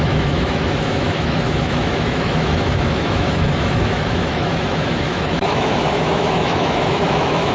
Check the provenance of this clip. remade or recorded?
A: remade